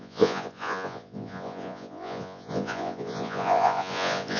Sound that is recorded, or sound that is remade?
remade